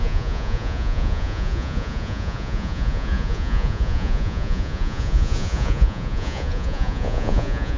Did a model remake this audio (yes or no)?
yes